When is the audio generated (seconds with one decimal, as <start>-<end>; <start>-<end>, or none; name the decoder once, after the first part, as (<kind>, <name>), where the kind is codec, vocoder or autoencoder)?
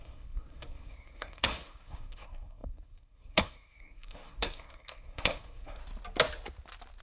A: 0.0-5.8 (codec, SNAC)